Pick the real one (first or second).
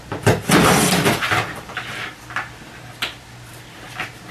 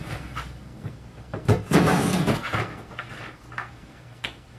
first